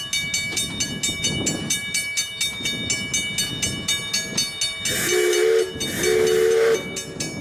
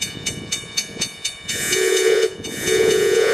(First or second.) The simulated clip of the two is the second